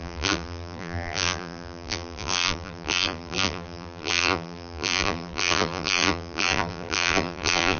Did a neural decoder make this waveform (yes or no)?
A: yes